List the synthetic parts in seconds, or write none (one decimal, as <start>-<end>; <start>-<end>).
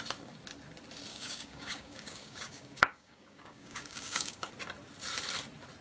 1.1-4.5